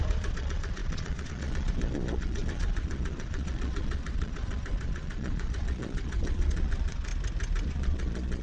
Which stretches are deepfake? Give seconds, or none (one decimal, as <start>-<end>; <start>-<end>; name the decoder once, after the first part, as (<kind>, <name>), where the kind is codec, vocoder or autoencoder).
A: 0.0-7.1 (vocoder, Vocos); 7.7-8.4